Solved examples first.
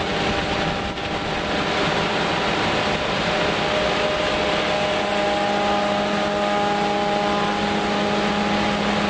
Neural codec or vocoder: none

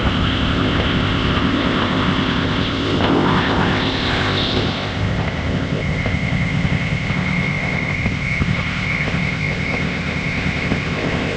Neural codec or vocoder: codec, ZipCodec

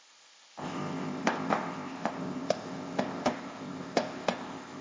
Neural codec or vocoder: codec, ZipCodec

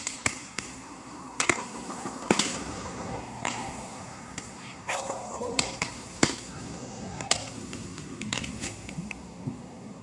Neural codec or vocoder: codec, SNAC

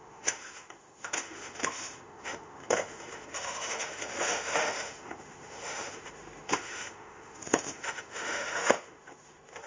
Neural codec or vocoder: autoencoder, DAC-VAE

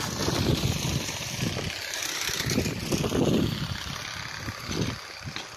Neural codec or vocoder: none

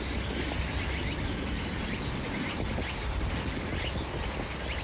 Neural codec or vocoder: none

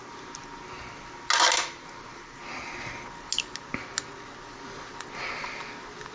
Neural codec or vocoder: none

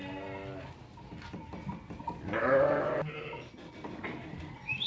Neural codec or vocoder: none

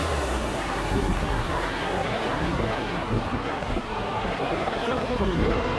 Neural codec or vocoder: codec, SNAC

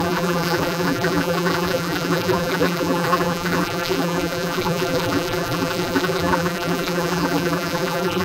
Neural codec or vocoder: vocoder, BigVGAN v2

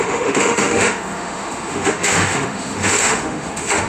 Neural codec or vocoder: autoencoder, DAC-VAE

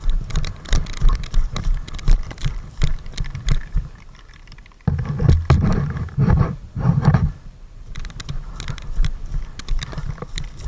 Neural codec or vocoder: vocoder, BigVGAN v2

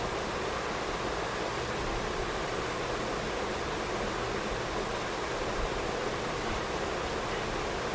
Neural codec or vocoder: none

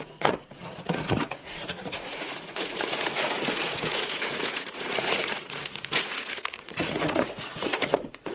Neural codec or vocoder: vocoder, Vocos